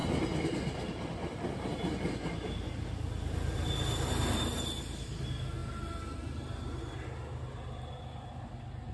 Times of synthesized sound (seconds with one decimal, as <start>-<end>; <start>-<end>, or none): none